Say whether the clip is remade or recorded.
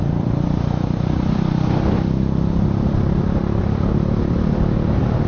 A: remade